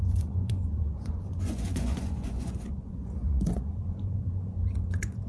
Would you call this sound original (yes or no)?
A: no